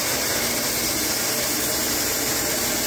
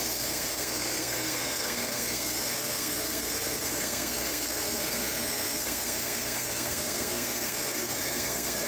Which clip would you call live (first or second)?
first